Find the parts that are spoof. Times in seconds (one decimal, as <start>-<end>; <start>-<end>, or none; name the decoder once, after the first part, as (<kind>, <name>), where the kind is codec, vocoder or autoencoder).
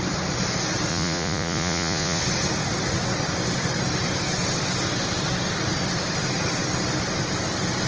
0.9-2.2 (vocoder, Vocos)